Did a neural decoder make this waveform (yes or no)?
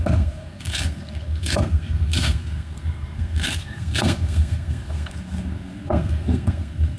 yes